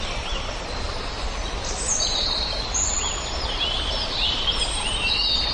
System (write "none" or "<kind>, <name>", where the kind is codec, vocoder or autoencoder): none